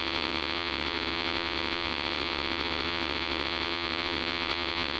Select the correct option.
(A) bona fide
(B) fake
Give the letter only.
B